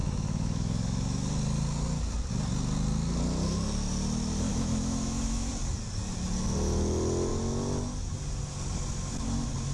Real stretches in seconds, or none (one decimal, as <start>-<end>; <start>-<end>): 1.3-4.5; 5.5-9.7